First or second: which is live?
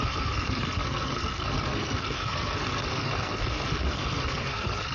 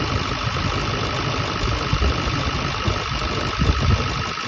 second